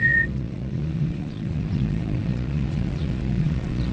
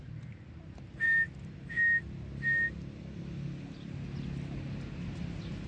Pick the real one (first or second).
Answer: second